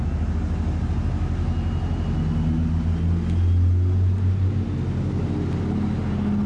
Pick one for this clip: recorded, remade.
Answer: recorded